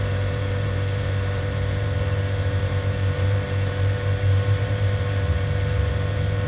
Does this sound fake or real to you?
fake